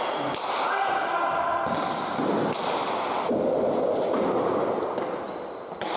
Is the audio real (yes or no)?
yes